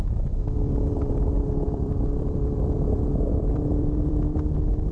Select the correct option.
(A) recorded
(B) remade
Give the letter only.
B